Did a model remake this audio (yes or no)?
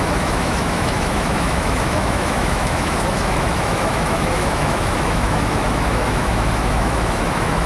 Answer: yes